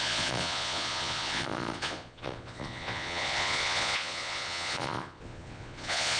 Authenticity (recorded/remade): remade